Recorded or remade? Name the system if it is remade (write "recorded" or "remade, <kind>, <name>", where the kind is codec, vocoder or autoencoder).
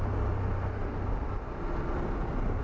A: recorded